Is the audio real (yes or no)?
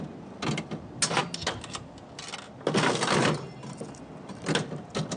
yes